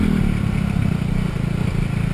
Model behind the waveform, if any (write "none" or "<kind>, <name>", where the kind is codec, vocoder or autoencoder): none